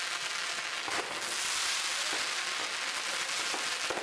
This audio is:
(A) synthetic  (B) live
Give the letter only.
B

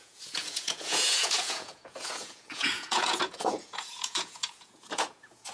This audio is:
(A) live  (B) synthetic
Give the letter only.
B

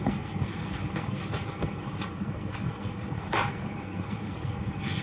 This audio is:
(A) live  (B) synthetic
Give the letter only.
B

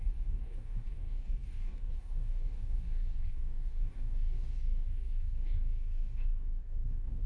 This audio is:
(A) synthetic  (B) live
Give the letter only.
A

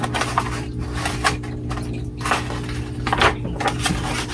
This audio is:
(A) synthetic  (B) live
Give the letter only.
B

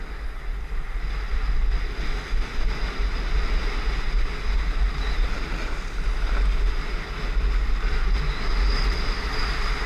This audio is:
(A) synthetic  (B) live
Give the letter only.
B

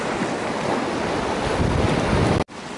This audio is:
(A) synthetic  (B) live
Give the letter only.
B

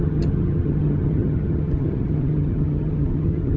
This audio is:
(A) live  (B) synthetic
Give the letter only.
B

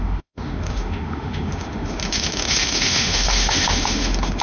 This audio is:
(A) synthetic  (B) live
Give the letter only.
A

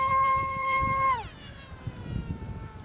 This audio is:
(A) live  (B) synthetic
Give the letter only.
B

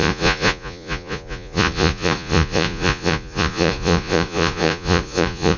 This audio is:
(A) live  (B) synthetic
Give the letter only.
B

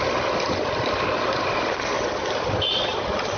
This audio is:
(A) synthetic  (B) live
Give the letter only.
B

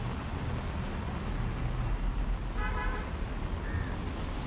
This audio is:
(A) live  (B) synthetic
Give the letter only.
A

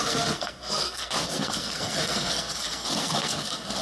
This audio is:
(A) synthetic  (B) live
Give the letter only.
A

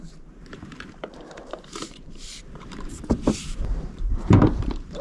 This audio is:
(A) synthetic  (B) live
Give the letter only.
A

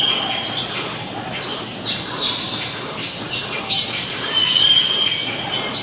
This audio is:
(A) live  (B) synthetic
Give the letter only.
A